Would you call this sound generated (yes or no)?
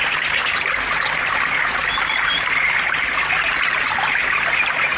no